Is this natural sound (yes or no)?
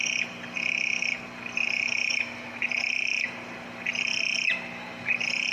yes